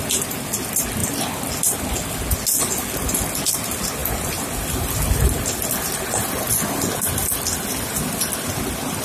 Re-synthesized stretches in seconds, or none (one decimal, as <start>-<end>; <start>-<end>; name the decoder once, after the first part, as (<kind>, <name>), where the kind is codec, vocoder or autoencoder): none